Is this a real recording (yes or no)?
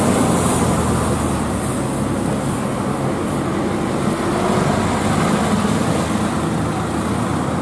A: yes